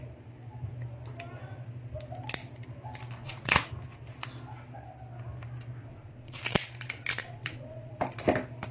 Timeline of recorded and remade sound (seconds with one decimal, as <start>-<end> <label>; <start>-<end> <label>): 0.0-3.2 recorded; 3.2-3.7 remade; 3.7-5.9 recorded; 5.9-6.4 remade; 6.4-7.2 recorded; 7.2-7.9 remade; 7.9-8.7 recorded